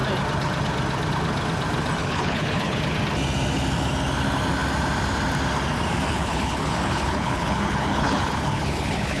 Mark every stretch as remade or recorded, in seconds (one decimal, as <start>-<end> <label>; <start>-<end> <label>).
0.0-2.0 recorded; 2.0-2.8 remade; 2.8-6.1 recorded; 6.1-9.2 remade